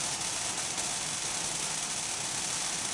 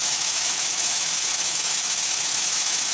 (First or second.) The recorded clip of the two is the first